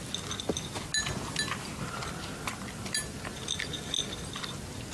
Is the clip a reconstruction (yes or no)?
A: no